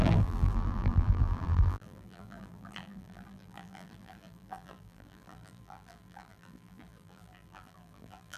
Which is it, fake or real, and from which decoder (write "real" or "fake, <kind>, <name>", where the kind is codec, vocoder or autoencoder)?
fake, vocoder, BigVGAN v2